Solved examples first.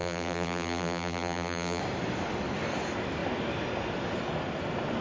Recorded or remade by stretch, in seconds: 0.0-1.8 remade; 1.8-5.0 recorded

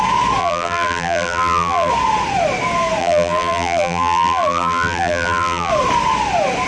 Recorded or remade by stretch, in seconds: 0.0-0.4 recorded; 0.4-1.9 remade; 1.9-3.0 recorded; 3.0-5.7 remade; 5.7-6.7 recorded

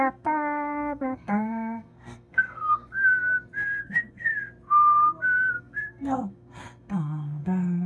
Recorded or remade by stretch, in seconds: 0.0-3.0 remade; 3.0-3.8 recorded; 3.8-4.3 remade; 4.3-5.5 recorded; 5.5-7.9 remade

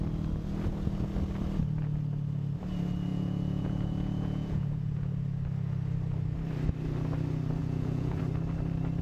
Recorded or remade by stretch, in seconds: 0.0-3.1 recorded; 3.1-5.1 remade; 5.1-7.6 recorded; 7.6-8.2 remade; 8.2-9.0 recorded